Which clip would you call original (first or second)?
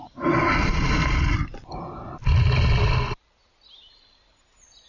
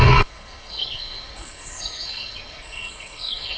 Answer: first